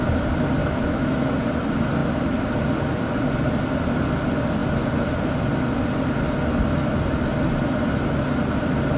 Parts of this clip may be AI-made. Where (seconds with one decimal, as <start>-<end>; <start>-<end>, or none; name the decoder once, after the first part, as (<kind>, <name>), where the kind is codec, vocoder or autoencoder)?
0.6-1.3 (autoencoder, DAC-VAE)